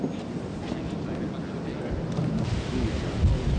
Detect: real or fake real